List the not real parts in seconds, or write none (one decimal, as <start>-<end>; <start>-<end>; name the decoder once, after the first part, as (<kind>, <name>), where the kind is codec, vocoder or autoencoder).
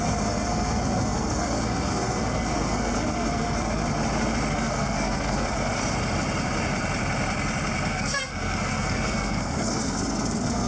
0.0-3.8 (codec, SNAC); 4.5-5.8; 7.9-10.7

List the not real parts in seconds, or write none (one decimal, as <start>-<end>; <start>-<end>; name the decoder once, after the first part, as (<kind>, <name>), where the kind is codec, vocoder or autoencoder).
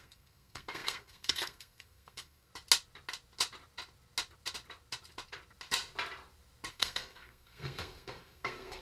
0.0-2.5 (codec, SNAC); 6.7-8.8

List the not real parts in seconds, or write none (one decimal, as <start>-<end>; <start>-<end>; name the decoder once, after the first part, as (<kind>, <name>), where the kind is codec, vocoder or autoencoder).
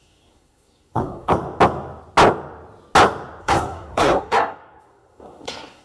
0.0-1.3 (codec, SNAC); 3.4-5.8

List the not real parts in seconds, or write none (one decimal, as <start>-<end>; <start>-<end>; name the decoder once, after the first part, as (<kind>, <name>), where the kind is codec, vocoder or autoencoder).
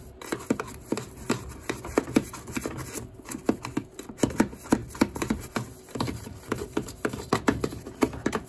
none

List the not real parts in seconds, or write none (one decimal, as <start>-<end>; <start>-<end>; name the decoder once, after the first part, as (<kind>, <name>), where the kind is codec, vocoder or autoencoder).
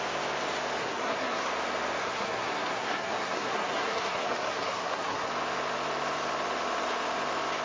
0.8-1.5 (codec, SNAC); 2.0-5.3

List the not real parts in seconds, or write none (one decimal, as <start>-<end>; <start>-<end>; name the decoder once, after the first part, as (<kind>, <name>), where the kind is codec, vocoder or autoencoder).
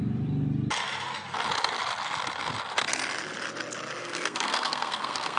4.0-5.4 (codec, SNAC)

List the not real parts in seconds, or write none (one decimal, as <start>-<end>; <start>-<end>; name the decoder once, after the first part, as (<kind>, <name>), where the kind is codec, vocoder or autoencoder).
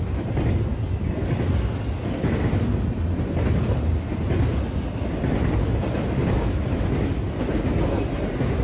none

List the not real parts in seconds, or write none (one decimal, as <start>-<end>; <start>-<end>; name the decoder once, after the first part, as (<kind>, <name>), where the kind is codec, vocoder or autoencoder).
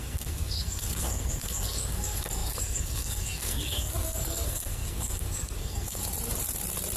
0.0-6.0 (codec, SNAC)